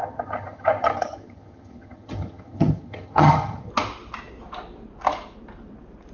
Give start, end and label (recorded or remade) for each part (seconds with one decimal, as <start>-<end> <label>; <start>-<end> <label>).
0.0-3.7 remade; 3.7-6.1 recorded